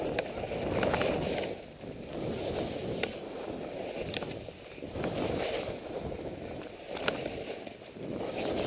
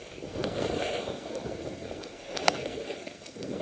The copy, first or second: second